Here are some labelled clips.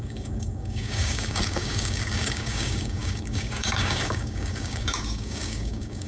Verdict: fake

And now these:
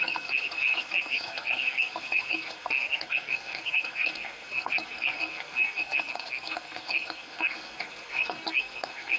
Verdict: fake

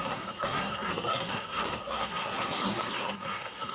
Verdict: fake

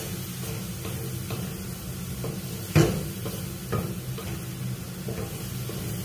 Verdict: real